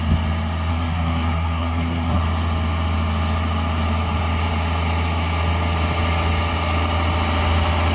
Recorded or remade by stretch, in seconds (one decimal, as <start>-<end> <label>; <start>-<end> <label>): 0.0-0.7 recorded; 0.7-2.2 remade; 2.2-7.9 recorded